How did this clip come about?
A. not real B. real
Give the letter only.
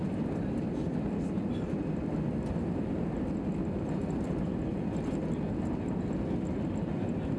B